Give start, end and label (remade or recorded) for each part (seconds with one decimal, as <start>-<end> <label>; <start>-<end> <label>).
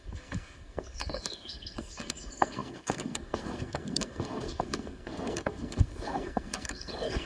0.0-7.3 remade